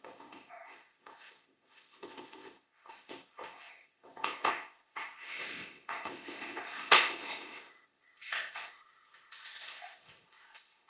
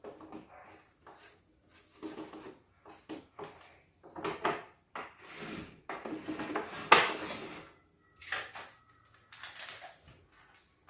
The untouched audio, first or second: second